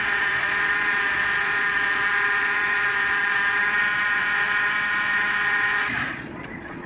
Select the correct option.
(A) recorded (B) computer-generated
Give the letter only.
B